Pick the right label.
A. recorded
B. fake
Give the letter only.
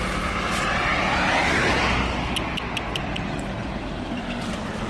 A